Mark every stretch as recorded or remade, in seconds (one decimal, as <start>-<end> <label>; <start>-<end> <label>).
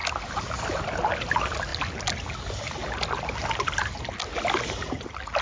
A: 0.0-5.4 recorded